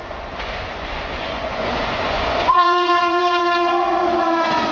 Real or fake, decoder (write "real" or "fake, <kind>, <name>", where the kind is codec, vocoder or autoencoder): fake, vocoder, Vocos